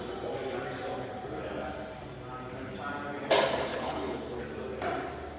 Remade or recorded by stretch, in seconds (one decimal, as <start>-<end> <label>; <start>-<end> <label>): 0.0-3.7 recorded; 3.7-4.4 remade; 4.4-5.4 recorded

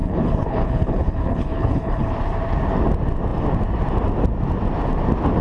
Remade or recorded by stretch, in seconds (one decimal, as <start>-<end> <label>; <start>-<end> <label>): 0.0-2.1 remade; 2.1-5.4 recorded

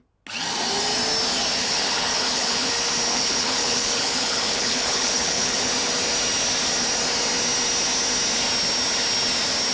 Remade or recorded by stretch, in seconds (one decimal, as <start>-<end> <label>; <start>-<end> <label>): 0.0-1.6 recorded; 1.6-2.7 remade; 2.7-3.1 recorded; 3.1-5.7 remade; 5.7-9.7 recorded

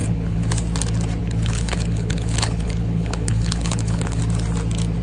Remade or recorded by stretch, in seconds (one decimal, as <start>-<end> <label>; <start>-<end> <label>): 0.0-0.5 remade; 0.5-1.2 recorded; 1.2-4.2 remade; 4.2-5.0 recorded